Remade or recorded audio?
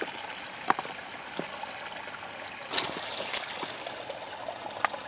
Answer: recorded